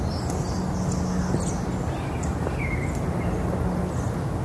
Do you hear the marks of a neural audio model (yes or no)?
no